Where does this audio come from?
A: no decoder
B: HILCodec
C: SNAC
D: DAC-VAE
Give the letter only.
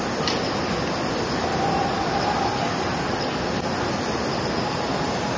A